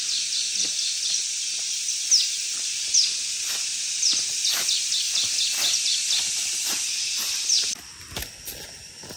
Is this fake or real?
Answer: real